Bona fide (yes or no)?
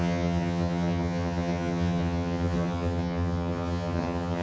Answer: no